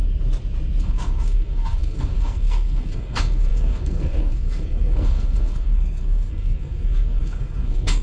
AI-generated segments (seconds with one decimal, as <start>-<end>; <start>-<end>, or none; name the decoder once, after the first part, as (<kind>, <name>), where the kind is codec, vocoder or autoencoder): 0.8-8.0 (codec, SNAC)

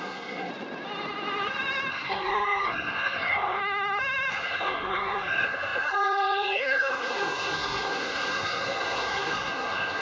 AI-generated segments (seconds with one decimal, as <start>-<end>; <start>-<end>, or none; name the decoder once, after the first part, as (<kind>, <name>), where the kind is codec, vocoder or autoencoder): 0.0-0.5 (codec, SNAC); 1.9-3.6; 4.3-10.0

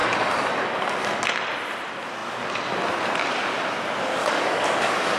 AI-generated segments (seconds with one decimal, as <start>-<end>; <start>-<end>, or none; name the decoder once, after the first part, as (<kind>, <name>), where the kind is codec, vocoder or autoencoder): 0.0-1.2 (codec, DAC); 4.2-5.2

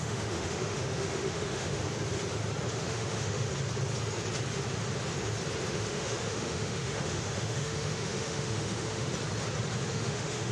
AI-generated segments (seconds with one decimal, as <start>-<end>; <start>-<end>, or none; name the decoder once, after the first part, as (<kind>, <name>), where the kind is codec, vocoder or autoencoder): 0.0-1.8 (autoencoder, DAC-VAE); 2.7-3.5; 5.7-9.1; 9.9-10.5

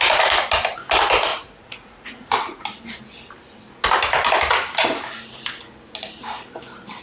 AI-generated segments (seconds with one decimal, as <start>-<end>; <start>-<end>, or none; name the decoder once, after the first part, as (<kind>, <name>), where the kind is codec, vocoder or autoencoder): 1.3-2.6 (vocoder, Vocos)

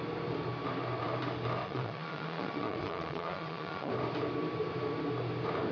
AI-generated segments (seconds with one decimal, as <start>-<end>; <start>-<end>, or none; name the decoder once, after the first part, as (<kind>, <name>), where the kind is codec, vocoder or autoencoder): 1.6-3.9 (vocoder, Vocos)

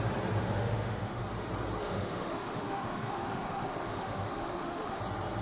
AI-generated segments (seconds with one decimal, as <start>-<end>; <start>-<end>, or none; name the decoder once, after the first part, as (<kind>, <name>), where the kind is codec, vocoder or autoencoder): 0.4-1.2 (autoencoder, DAC-VAE); 1.8-5.0

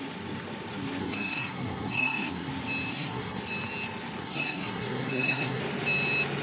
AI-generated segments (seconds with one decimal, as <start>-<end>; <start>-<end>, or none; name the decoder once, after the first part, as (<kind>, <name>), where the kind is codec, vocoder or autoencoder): 1.0-2.5 (codec, SNAC); 2.9-3.4; 4.2-5.6